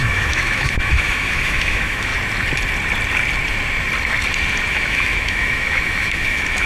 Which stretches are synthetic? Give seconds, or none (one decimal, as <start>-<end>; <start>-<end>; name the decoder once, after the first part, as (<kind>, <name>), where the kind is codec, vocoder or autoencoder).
0.0-2.1 (autoencoder, DAC-VAE); 4.7-6.7